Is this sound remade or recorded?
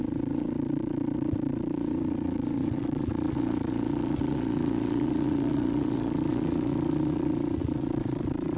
remade